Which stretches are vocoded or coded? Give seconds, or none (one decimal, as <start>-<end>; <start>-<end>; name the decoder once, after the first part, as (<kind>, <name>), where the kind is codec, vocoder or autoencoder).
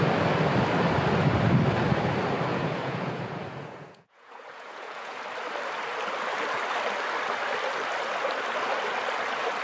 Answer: 2.5-5.2 (vocoder, Vocos)